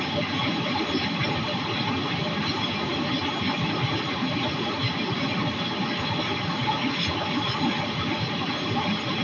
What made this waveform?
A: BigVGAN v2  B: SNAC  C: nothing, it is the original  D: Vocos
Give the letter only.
C